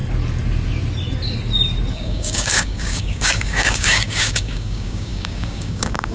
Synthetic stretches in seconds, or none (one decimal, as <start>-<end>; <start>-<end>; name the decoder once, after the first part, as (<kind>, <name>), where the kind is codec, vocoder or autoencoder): 1.9-6.1 (codec, DAC)